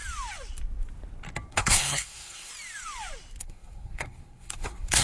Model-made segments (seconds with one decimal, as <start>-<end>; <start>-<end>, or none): 1.5-2.5; 3.4-5.0